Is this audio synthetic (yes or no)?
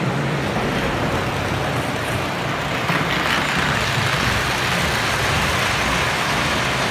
no